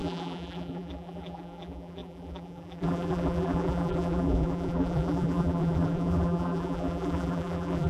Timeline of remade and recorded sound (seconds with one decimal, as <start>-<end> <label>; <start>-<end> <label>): 0.0-7.9 remade